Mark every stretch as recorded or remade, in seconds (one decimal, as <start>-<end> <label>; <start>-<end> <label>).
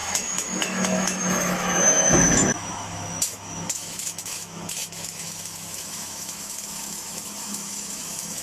0.0-8.4 remade